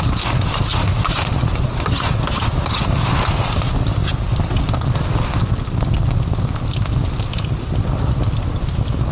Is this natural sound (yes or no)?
yes